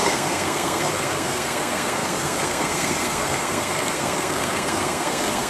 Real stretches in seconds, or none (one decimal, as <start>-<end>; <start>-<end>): none